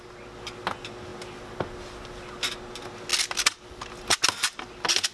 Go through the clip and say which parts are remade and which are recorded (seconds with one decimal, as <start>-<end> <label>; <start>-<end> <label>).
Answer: 0.0-5.1 recorded